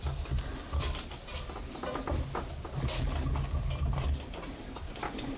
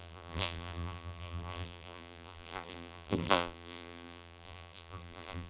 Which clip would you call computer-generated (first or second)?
second